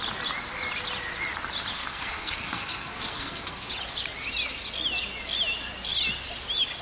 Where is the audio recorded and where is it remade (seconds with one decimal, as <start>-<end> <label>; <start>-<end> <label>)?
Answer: 0.0-1.8 recorded; 1.8-3.7 remade; 3.7-6.8 recorded